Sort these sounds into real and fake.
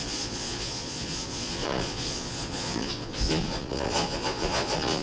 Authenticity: fake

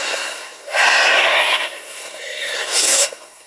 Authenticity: fake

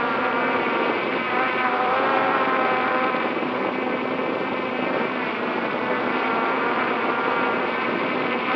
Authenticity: fake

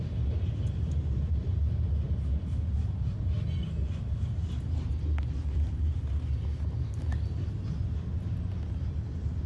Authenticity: real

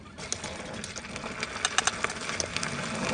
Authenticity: real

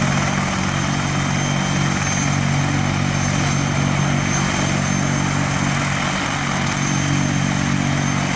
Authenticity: real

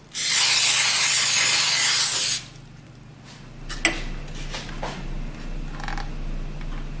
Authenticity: real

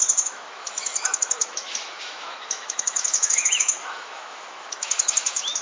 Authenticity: fake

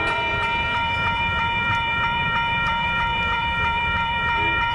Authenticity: fake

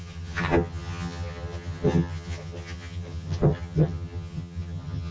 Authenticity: fake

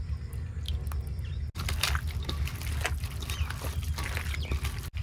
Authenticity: real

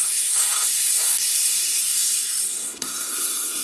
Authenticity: fake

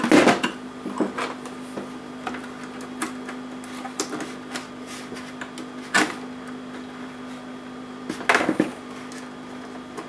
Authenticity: real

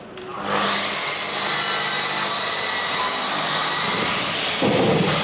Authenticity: real